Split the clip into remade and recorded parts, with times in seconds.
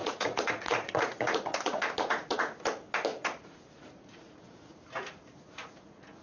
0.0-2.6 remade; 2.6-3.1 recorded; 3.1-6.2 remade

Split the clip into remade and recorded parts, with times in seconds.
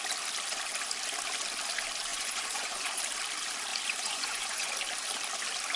0.0-2.1 recorded; 2.1-3.0 remade; 3.0-3.7 recorded; 3.7-4.7 remade; 4.7-5.8 recorded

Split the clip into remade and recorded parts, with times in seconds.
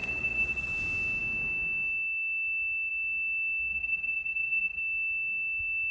0.0-0.7 remade; 0.7-3.7 recorded; 3.7-4.8 remade; 4.8-5.9 recorded